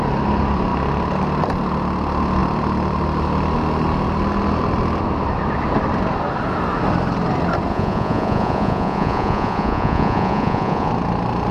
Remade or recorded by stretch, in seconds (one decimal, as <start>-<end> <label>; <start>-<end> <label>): 0.0-7.7 recorded; 7.7-10.9 remade; 10.9-11.5 recorded